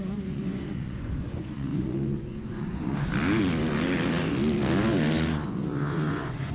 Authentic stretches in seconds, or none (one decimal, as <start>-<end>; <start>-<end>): 3.1-5.3